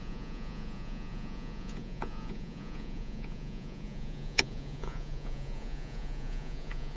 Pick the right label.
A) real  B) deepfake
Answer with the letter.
B